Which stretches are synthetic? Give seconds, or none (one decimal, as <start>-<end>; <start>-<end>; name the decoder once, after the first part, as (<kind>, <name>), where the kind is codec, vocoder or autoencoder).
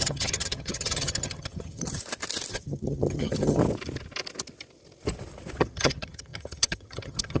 0.0-2.0 (vocoder, HiFi-GAN); 2.5-3.6; 5.6-7.4